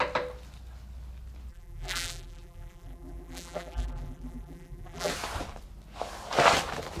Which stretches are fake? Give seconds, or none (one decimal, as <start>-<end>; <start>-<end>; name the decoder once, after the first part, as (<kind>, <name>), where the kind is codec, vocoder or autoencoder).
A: 1.5-5.1 (vocoder, BigVGAN v2)